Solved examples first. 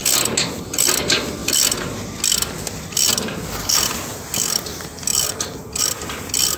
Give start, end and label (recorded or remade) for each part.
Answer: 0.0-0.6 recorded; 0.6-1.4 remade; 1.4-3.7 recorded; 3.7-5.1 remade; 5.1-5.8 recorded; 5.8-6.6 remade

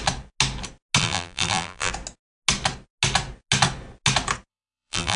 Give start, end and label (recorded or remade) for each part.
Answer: 0.0-1.0 recorded; 1.0-1.9 remade; 1.9-4.5 recorded; 4.5-5.2 remade

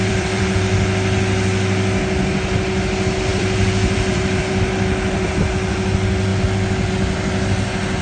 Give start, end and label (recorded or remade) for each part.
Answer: 0.0-0.6 remade; 0.6-3.3 recorded; 3.3-4.5 remade; 4.5-8.0 recorded

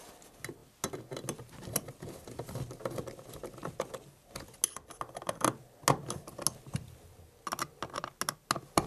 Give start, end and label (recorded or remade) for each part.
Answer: 0.0-8.9 recorded

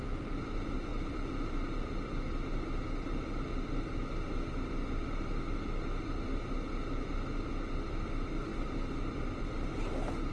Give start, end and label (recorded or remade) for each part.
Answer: 0.0-10.3 recorded